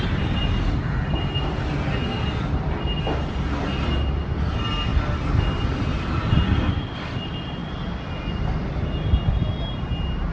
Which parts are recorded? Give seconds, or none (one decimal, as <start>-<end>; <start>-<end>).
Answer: 0.0-10.3